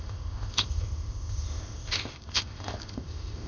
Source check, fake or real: fake